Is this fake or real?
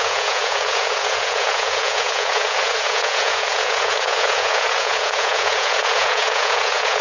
fake